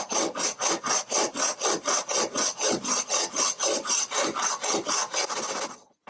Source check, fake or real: real